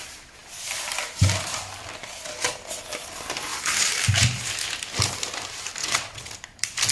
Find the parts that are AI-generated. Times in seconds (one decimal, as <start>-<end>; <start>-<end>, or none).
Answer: 5.8-6.3